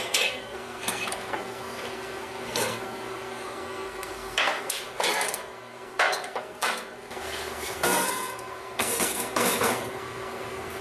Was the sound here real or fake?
fake